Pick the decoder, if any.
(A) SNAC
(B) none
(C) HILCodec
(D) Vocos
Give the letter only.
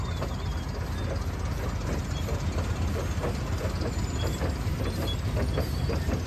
B